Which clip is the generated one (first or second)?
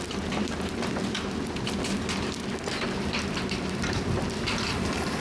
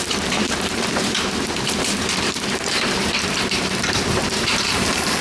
second